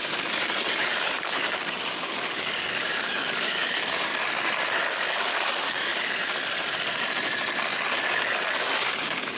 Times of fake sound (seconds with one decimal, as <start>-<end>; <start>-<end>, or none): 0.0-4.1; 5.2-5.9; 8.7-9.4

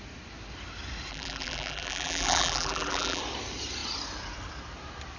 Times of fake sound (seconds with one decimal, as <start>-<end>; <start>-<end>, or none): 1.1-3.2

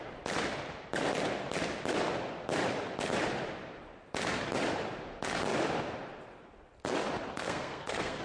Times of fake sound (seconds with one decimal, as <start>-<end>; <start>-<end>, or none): 7.3-8.2